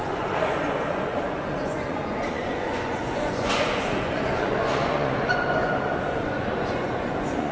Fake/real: fake